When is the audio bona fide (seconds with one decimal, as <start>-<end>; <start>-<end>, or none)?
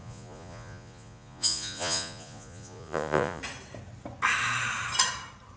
3.4-5.6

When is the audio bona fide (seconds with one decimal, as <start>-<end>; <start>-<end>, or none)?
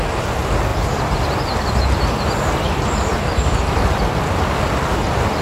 0.0-0.7; 1.8-3.1; 4.1-5.4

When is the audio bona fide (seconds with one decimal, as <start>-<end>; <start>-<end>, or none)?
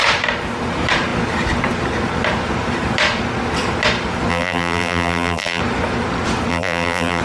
0.0-4.3; 5.6-6.5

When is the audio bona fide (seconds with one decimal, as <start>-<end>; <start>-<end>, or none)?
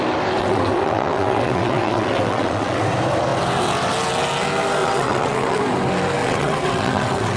0.0-0.4; 2.8-4.8; 5.6-6.2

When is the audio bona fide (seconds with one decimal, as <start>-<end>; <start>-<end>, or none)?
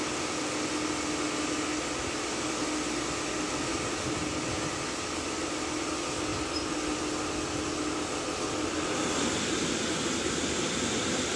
0.0-11.4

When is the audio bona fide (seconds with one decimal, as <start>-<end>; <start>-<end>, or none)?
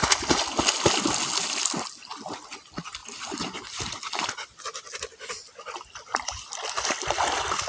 0.0-7.7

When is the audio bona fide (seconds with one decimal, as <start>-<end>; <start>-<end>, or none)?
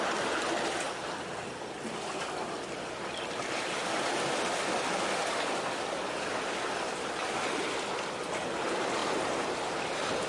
0.0-10.3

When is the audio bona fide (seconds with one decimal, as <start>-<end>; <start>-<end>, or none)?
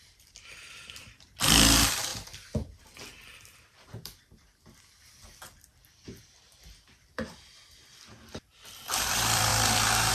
9.5-10.1